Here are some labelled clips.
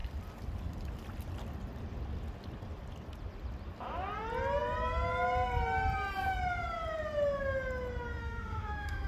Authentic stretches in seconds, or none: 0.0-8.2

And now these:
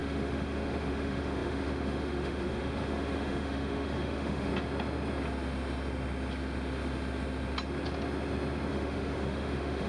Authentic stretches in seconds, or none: 4.5-8.7

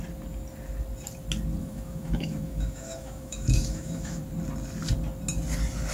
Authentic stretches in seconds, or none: 0.0-1.6; 4.2-5.9

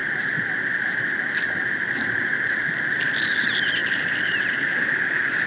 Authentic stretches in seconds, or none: 0.0-5.5

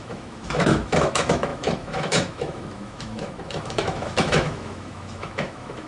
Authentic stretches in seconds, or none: none

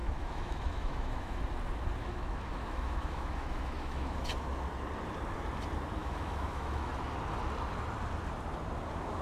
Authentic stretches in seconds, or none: 1.4-2.0; 4.2-6.0; 6.9-9.2

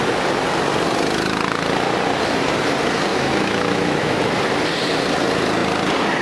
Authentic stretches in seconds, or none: 0.0-3.1; 4.2-6.2